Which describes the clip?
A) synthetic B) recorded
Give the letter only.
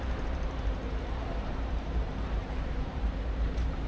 A